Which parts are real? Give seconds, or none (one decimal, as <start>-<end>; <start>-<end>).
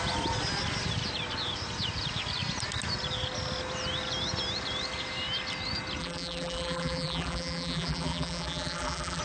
0.0-6.0